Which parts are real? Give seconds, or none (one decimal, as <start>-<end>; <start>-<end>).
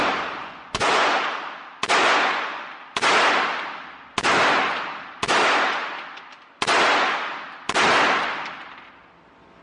0.0-0.4; 1.2-2.0; 2.7-9.6